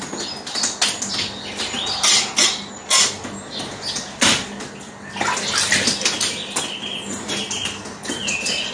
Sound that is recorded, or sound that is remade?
recorded